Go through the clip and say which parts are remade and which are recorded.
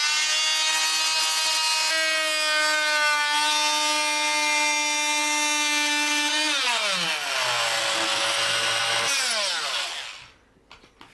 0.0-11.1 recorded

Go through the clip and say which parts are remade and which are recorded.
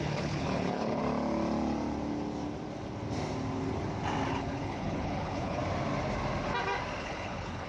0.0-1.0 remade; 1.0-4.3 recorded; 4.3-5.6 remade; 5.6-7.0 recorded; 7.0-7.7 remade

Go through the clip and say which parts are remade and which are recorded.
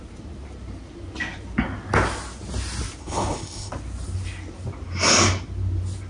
0.0-3.0 recorded; 3.0-3.7 remade; 3.7-6.1 recorded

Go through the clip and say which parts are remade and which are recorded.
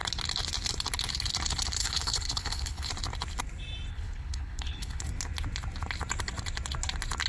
0.0-1.8 recorded; 1.8-2.9 remade; 2.9-3.9 recorded; 3.9-5.0 remade; 5.0-7.3 recorded